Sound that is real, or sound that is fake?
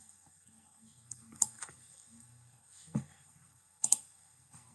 fake